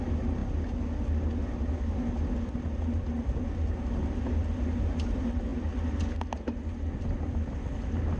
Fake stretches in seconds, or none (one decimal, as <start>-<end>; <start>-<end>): none